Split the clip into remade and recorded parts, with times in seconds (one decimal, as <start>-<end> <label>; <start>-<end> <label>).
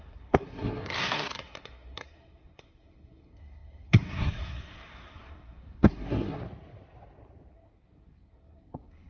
0.0-6.4 remade; 6.4-7.5 recorded; 7.5-9.1 remade